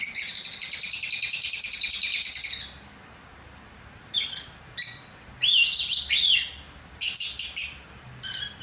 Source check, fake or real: real